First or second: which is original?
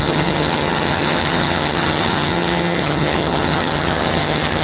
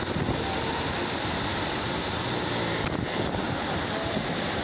second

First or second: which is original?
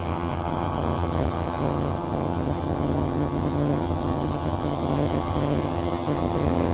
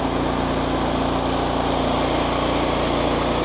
second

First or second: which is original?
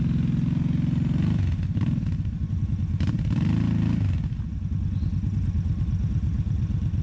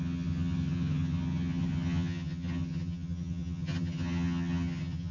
first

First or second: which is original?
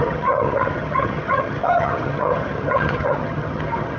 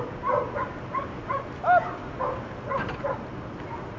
second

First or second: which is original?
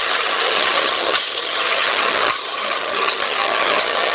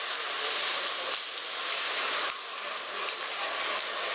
second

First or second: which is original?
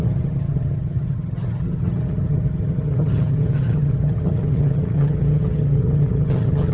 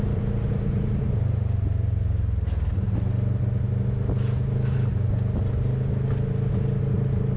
second